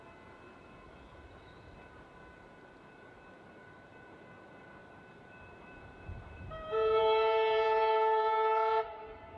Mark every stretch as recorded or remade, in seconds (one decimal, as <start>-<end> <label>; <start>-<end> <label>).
0.0-4.8 recorded; 4.8-8.8 remade; 8.8-9.4 recorded